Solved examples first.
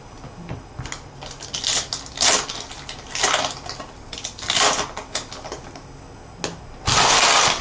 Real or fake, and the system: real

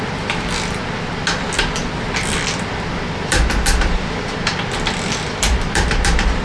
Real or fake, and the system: fake, vocoder, BigVGAN v2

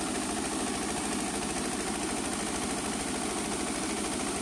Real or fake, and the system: real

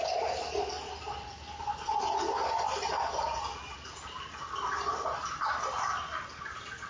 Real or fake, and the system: real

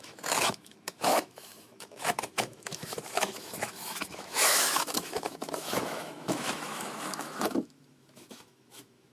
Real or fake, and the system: fake, autoencoder, DAC-VAE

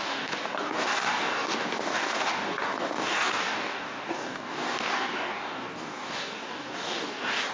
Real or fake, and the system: fake, codec, DAC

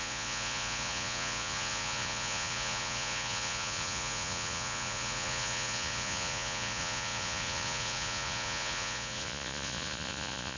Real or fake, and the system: fake, vocoder, Vocos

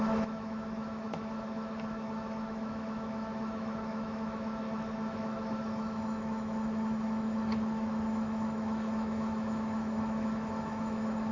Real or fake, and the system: fake, autoencoder, DAC-VAE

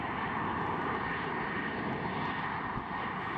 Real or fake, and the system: real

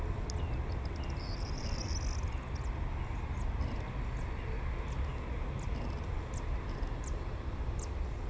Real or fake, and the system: real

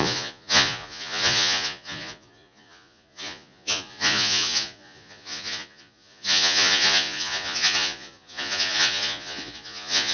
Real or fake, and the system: fake, vocoder, Vocos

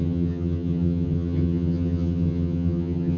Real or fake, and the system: fake, vocoder, HiFi-GAN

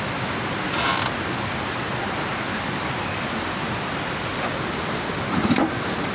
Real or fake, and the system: real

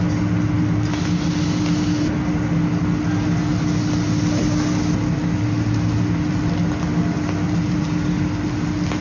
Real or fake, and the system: real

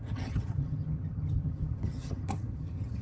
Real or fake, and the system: fake, vocoder, HiFi-GAN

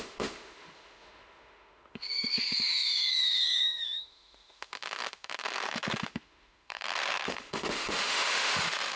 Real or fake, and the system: fake, autoencoder, DAC-VAE